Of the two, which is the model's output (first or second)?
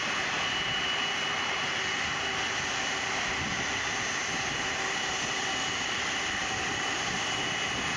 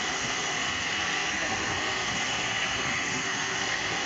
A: second